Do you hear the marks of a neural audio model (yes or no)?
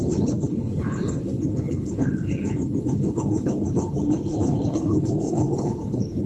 yes